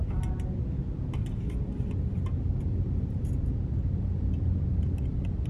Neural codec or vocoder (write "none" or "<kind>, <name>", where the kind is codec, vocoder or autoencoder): none